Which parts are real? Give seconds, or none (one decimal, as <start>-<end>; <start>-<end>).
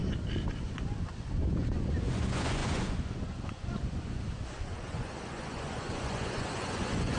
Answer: 0.0-0.6